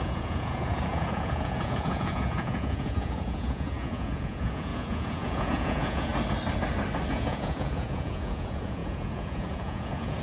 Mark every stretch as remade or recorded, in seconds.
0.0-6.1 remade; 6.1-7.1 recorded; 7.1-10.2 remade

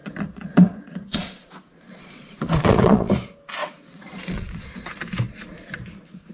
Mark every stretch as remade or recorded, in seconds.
0.0-3.1 remade; 3.1-3.6 recorded; 3.6-4.9 remade; 4.9-6.3 recorded

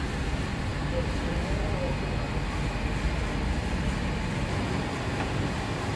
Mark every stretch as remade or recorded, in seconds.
0.0-6.0 recorded